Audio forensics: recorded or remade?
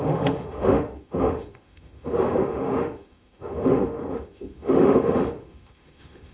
remade